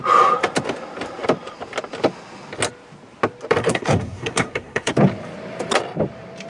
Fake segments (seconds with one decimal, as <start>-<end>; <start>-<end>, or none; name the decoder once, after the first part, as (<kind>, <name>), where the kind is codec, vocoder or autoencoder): 3.6-4.9 (codec, SNAC)